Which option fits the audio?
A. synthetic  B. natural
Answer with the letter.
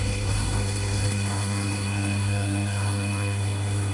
A